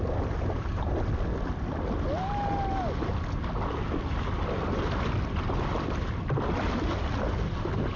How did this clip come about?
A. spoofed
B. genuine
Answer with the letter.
B